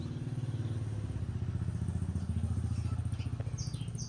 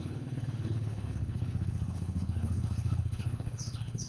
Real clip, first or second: first